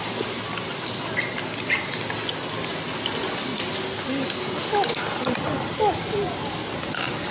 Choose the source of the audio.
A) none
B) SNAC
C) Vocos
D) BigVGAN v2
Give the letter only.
A